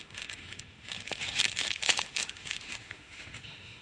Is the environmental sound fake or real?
fake